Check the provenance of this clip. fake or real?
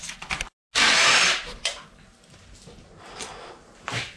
real